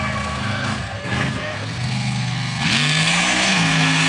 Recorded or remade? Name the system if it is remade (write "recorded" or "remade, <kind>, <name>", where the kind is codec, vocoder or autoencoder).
remade, codec, SNAC